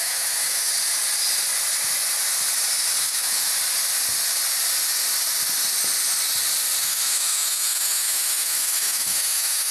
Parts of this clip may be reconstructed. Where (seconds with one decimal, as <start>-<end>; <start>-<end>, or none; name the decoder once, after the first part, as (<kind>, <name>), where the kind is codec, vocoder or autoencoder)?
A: 0.0-0.7 (autoencoder, DAC-VAE); 3.0-3.5; 6.8-9.7